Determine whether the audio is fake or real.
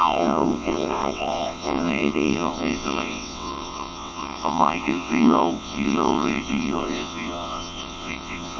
fake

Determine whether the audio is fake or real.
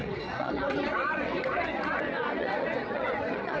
fake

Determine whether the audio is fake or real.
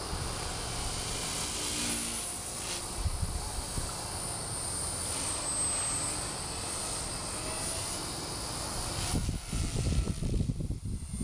real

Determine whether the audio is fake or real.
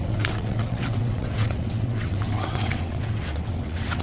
fake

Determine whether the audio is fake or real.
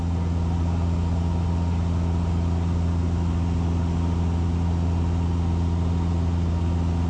real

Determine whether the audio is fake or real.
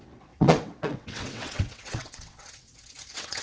fake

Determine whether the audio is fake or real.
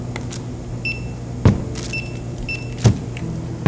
real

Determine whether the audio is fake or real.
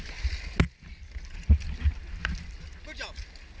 real